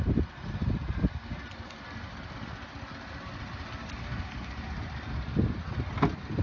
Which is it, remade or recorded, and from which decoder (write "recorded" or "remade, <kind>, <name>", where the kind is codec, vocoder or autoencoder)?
recorded